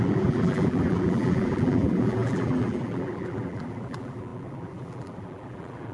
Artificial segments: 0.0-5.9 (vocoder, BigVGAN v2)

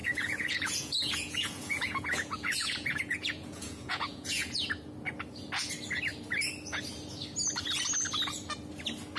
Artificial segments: 0.0-4.7 (vocoder, Vocos)

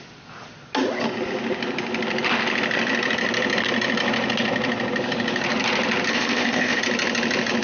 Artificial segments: 6.1-6.8 (codec, ZipCodec)

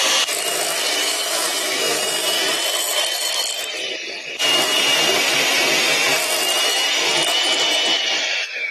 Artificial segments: 1.0-2.4 (autoencoder, DAC-VAE)